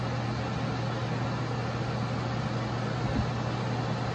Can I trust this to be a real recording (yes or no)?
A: yes